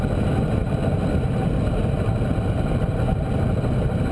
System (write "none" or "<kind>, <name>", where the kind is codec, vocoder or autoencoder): none